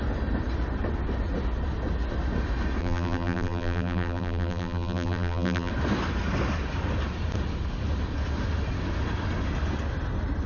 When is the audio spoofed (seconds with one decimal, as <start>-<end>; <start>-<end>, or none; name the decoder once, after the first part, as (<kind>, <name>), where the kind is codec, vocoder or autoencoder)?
2.8-5.7 (vocoder, BigVGAN v2)